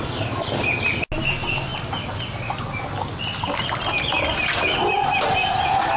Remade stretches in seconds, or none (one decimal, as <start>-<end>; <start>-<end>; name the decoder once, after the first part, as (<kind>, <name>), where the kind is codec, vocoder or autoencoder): none